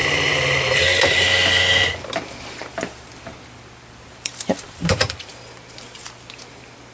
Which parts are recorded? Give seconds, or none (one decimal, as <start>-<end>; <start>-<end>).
1.6-3.1; 5.3-6.9